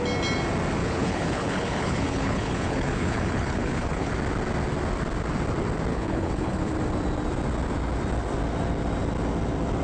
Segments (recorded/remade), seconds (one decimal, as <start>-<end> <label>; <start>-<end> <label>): 0.0-0.8 recorded; 0.8-4.1 remade; 4.1-5.9 recorded; 5.9-6.7 remade; 6.7-9.8 recorded